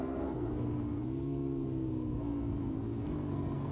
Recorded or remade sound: remade